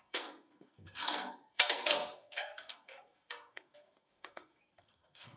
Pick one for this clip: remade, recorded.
remade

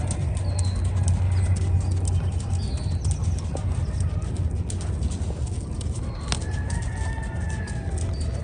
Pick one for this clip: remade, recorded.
recorded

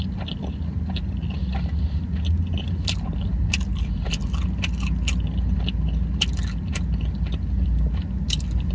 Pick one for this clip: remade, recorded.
recorded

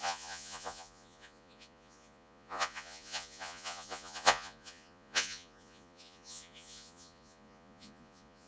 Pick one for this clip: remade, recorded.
remade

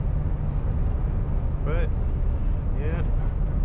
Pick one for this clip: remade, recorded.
recorded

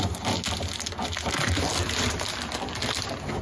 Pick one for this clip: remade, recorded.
recorded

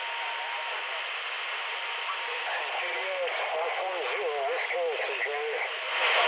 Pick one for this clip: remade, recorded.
recorded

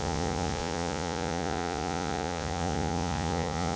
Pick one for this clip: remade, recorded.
remade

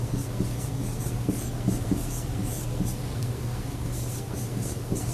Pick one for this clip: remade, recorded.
remade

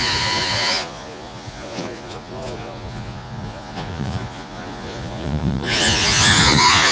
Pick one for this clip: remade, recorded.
remade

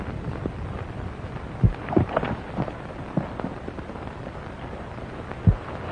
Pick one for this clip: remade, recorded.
recorded